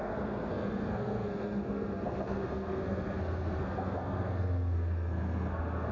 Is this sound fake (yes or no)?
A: yes